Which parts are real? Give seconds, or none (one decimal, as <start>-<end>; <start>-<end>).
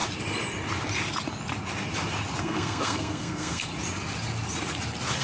0.0-2.4; 3.7-5.2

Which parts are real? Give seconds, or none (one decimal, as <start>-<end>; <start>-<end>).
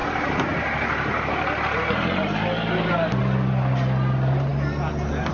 0.0-5.3